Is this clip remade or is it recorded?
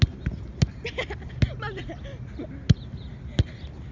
recorded